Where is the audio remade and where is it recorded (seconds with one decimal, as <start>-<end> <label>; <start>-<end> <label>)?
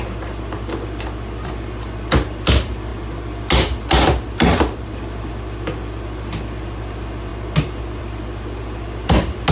0.0-9.5 recorded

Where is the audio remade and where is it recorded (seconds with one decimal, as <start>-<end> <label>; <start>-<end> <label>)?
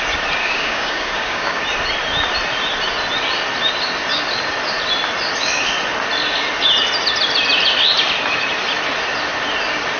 0.0-0.4 recorded; 0.4-1.6 remade; 1.6-10.0 recorded